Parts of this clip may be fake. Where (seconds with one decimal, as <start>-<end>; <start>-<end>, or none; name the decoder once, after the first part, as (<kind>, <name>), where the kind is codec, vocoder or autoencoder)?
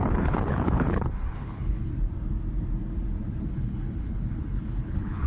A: 0.0-1.9 (codec, HILCodec); 3.4-5.3